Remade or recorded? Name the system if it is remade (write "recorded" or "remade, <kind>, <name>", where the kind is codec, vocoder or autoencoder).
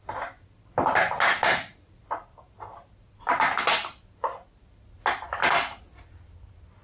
recorded